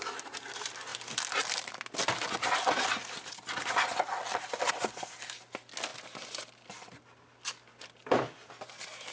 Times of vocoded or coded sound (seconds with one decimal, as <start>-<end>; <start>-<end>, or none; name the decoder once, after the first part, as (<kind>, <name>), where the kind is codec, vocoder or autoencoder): none

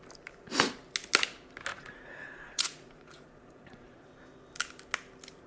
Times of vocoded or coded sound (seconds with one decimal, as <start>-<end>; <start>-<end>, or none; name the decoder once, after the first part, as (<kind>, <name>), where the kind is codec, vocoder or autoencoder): 1.7-4.1 (vocoder, Vocos)

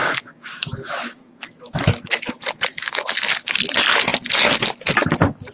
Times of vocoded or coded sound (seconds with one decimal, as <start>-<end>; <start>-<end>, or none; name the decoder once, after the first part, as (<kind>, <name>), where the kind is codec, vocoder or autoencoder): 0.0-3.3 (autoencoder, DAC-VAE)

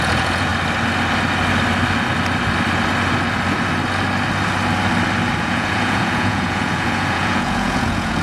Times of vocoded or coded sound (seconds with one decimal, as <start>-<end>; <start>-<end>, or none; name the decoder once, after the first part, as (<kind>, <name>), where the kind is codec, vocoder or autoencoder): 0.0-0.5 (vocoder, Vocos); 5.4-8.2